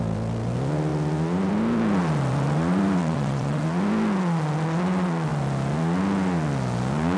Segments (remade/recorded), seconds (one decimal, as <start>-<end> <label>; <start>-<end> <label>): 0.0-3.0 recorded; 3.0-3.6 remade; 3.6-7.2 recorded